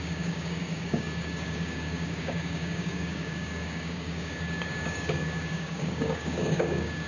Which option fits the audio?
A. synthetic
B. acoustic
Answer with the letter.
A